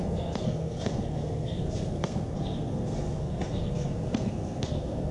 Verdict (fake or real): fake